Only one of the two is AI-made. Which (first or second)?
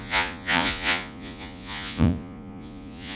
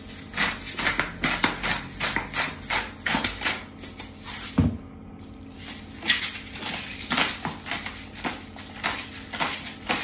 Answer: first